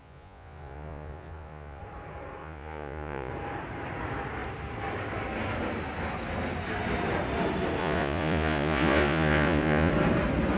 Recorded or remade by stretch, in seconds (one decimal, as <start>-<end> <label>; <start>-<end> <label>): 0.0-1.8 remade; 1.8-2.4 recorded; 2.4-3.3 remade; 3.3-7.8 recorded; 7.8-9.9 remade; 9.9-10.6 recorded